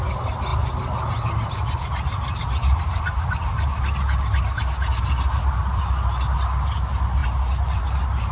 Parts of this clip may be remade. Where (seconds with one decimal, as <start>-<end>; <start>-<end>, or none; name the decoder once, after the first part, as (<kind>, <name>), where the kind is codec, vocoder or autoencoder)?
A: none